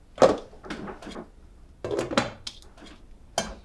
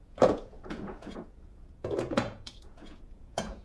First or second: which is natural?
first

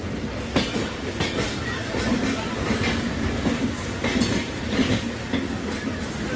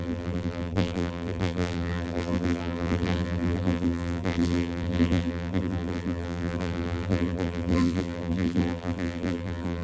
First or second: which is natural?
first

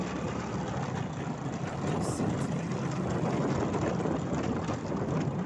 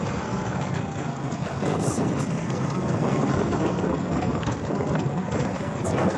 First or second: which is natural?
first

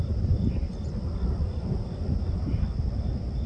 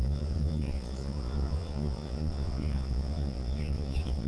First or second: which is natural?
first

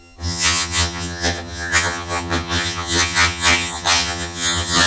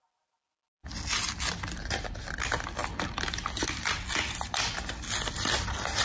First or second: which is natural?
second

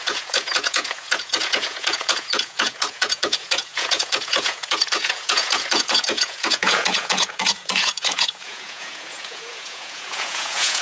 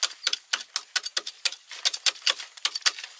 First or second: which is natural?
second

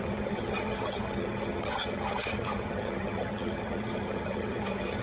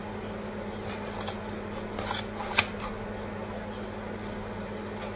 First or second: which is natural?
second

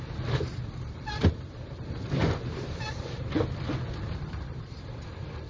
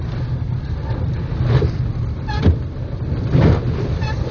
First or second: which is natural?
second